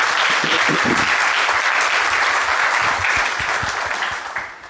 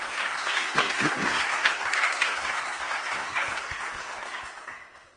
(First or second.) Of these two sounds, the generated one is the second